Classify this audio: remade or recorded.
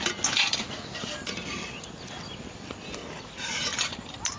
recorded